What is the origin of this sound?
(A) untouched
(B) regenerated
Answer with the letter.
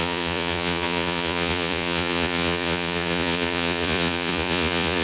B